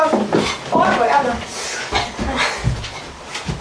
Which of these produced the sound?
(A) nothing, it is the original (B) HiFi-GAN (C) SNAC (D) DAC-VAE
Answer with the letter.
A